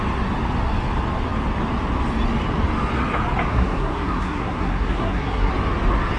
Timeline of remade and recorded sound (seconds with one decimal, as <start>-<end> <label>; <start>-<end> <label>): 0.0-3.5 recorded; 3.5-5.5 remade; 5.5-6.2 recorded